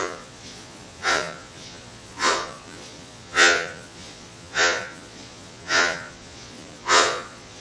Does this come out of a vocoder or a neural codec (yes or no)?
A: yes